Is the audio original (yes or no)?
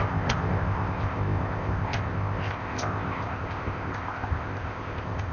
no